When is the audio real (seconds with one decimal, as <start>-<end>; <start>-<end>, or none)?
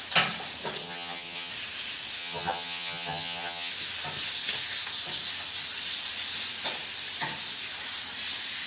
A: 0.0-0.8; 1.5-2.2; 3.7-8.7